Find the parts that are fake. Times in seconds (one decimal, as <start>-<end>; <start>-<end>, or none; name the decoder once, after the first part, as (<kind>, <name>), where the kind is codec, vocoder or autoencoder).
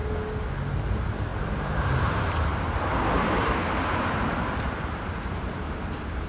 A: 0.9-6.3 (vocoder, BigVGAN v2)